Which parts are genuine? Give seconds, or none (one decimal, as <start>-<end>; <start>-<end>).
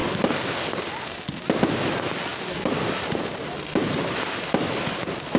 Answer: 0.0-2.3; 4.1-5.4